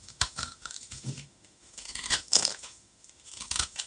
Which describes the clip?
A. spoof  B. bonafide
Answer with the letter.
A